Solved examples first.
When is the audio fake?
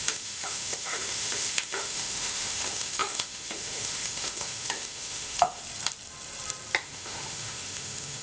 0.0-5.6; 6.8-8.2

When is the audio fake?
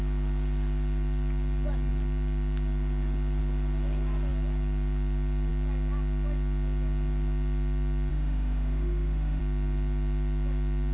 8.1-9.4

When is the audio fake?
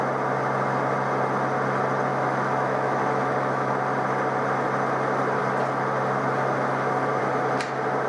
2.1-3.7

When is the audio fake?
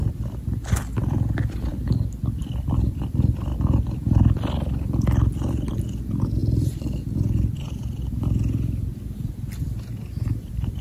0.0-1.7; 2.4-3.5; 6.0-10.8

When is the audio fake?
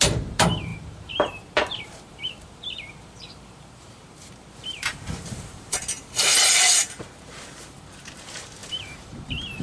0.0-9.6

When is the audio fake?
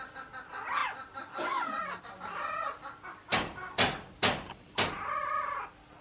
none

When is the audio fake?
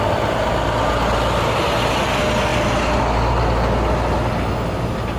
none